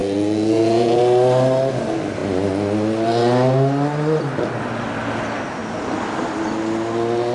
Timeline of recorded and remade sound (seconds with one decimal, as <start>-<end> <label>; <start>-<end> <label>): 0.0-1.0 remade; 1.0-7.3 recorded